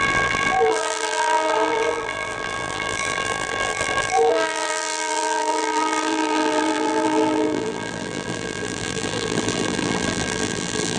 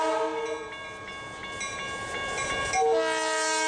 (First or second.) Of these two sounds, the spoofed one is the first